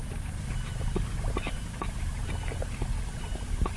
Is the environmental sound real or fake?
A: real